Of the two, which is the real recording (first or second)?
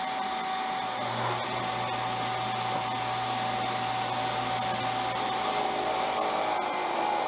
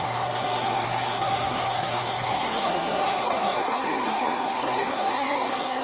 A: first